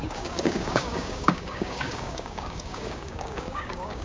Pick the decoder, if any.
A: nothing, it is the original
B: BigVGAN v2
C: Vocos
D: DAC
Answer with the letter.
D